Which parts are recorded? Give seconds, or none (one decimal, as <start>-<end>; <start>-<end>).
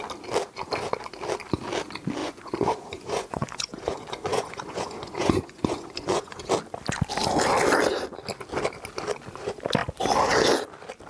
0.0-2.2; 6.5-11.1